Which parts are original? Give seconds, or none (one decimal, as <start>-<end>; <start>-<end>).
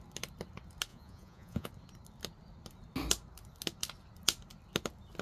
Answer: 0.0-0.9; 1.7-5.2